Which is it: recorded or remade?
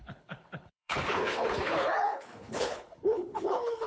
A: remade